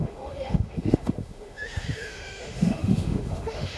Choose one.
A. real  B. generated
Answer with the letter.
B